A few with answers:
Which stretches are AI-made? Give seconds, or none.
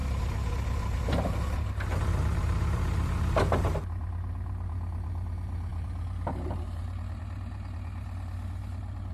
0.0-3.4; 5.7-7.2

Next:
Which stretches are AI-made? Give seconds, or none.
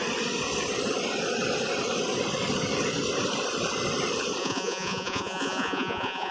4.4-6.3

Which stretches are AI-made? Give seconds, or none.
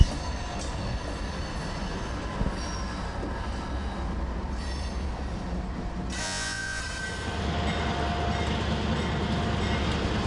6.2-6.8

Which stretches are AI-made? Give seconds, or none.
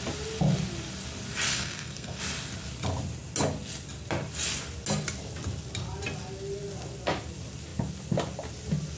1.5-2.2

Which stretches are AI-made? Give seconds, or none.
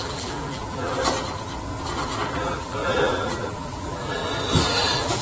0.0-1.0; 2.3-4.2; 4.7-5.2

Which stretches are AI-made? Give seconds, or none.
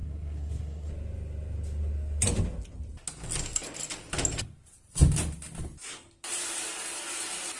0.0-0.9